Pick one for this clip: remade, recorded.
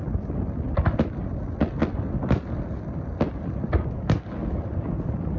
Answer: recorded